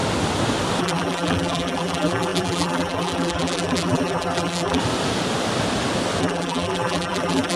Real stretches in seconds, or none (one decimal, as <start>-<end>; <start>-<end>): 0.0-0.8; 4.8-6.2